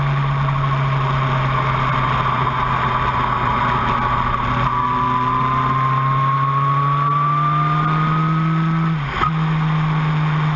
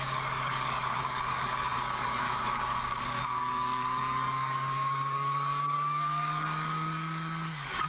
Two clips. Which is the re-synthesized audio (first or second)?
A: second